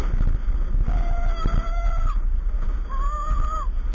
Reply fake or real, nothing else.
real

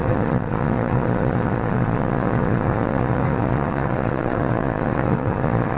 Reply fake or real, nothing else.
fake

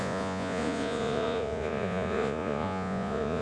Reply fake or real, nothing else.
fake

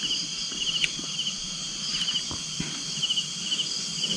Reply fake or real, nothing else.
real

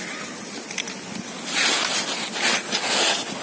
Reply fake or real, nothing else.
real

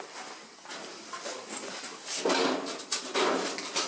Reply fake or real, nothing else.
real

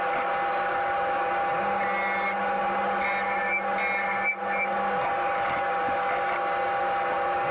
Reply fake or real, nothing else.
real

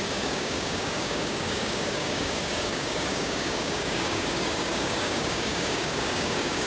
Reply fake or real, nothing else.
fake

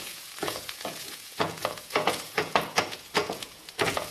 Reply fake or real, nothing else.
fake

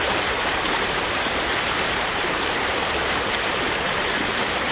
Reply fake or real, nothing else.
fake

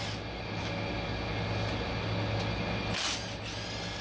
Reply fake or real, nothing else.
real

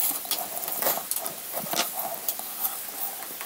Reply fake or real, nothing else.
real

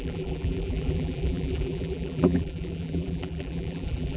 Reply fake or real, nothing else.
fake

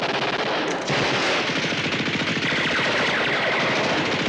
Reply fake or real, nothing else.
real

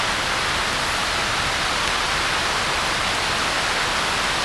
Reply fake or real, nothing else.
real